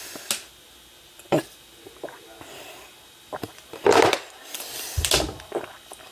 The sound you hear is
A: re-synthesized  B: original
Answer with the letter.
B